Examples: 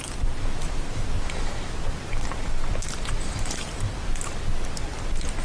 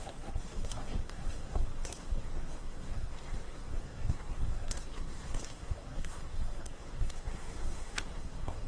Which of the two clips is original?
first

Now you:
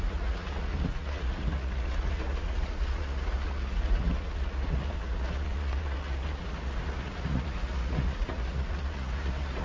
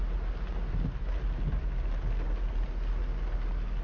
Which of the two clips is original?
second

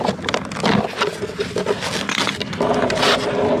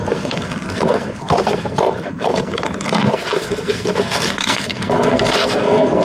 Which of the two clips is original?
first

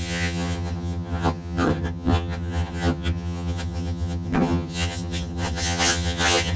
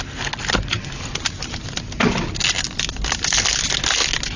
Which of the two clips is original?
second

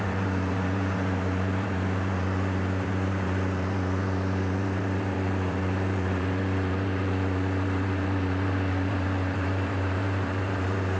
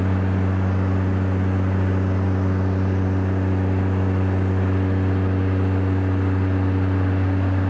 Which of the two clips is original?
second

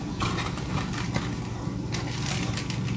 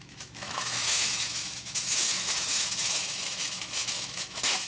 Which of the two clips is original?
first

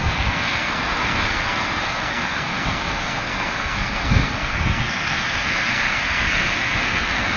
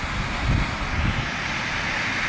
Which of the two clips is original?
second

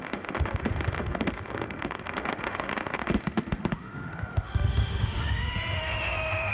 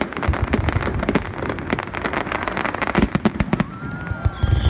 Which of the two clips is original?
second